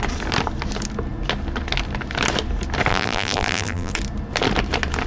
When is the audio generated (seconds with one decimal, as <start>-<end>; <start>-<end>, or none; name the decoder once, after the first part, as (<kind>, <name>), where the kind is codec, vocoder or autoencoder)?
2.9-3.9 (vocoder, BigVGAN v2)